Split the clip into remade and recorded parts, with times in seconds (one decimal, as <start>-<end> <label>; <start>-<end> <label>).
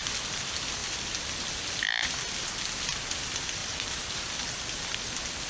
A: 0.0-3.6 recorded; 3.6-4.3 remade; 4.3-5.5 recorded